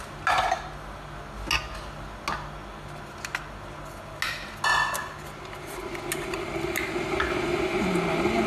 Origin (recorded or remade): recorded